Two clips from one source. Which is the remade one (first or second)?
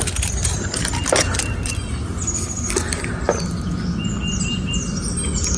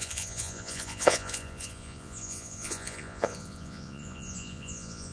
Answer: second